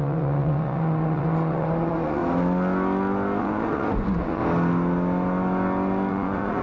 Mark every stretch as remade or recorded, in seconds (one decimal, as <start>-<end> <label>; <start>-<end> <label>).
0.0-2.2 remade; 2.2-3.4 recorded; 3.4-4.4 remade; 4.4-6.1 recorded; 6.1-6.6 remade